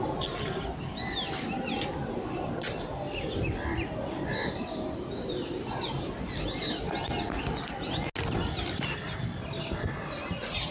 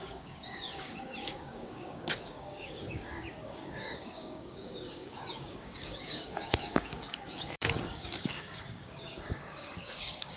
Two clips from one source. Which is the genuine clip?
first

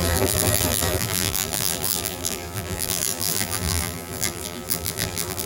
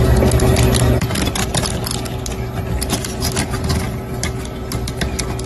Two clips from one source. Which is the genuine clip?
second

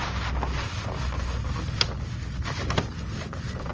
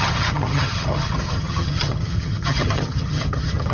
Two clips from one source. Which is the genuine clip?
first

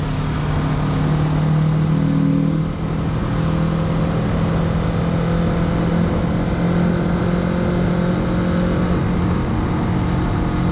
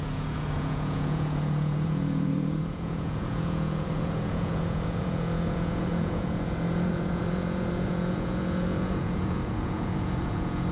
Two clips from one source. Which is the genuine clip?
first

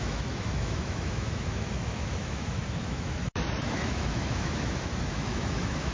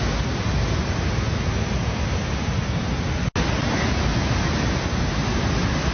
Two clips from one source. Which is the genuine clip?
second